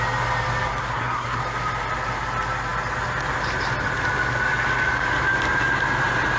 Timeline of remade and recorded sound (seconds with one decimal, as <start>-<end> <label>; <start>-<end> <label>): 0.0-0.8 recorded; 0.8-1.4 remade; 1.4-6.4 recorded